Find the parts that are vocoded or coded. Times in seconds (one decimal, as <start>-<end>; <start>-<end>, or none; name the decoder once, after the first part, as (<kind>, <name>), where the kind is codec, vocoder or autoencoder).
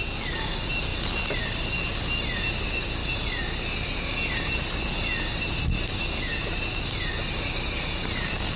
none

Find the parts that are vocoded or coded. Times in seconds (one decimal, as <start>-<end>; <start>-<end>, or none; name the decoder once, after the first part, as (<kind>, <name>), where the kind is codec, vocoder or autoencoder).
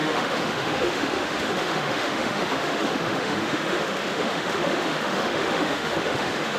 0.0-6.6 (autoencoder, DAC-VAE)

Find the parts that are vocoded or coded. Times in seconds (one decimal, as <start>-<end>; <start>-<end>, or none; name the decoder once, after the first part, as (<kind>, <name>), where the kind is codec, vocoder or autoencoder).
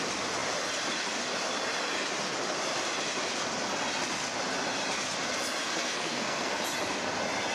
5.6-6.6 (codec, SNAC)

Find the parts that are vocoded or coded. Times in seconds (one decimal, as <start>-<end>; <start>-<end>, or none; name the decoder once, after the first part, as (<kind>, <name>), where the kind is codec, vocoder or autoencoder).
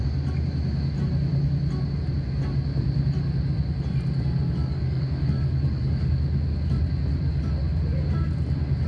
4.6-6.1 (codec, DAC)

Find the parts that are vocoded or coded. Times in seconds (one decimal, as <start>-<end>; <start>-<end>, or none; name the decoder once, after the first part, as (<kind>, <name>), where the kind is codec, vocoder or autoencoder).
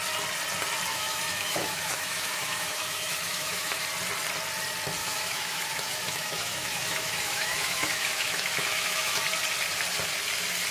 0.9-3.8 (autoencoder, DAC-VAE); 5.0-9.2